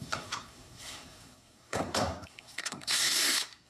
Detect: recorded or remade remade